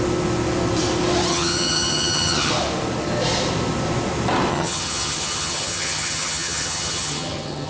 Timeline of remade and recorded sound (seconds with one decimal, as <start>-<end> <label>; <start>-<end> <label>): 0.0-1.3 recorded; 1.3-2.5 remade; 2.5-4.5 recorded; 4.5-7.7 remade